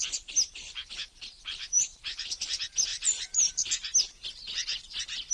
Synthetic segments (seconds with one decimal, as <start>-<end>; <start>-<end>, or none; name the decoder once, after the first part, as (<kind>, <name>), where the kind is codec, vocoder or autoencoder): 1.3-2.5 (vocoder, BigVGAN v2); 2.9-3.5